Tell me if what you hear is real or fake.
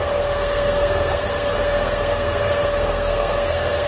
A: fake